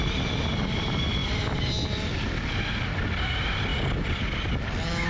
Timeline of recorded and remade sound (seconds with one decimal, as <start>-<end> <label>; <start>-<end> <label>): 0.0-5.1 recorded